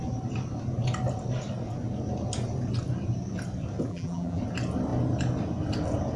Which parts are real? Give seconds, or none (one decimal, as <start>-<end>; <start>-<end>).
0.0-3.9; 4.4-6.2